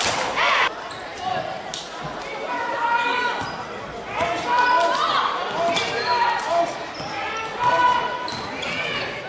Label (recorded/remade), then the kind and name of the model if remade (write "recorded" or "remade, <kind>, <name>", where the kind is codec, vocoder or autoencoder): recorded